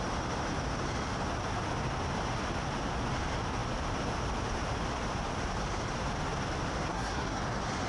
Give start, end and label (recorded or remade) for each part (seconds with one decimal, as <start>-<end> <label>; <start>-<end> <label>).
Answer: 0.0-6.8 recorded; 6.8-7.4 remade; 7.4-7.9 recorded